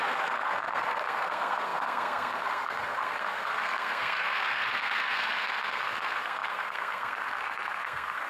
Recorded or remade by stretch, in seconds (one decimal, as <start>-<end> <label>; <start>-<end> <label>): 0.0-8.3 remade